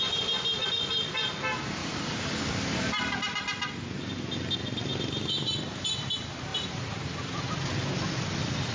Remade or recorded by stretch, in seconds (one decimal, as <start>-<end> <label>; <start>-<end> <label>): 0.0-1.8 recorded; 1.8-3.7 remade; 3.7-4.9 recorded; 4.9-5.8 remade; 5.8-6.5 recorded; 6.5-7.4 remade; 7.4-8.7 recorded